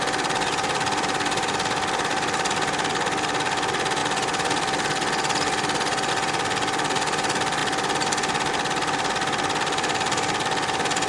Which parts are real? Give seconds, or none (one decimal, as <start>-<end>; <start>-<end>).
0.0-11.1